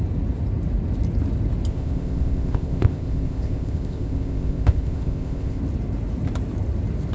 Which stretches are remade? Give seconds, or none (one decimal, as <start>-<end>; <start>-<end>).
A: 1.7-5.6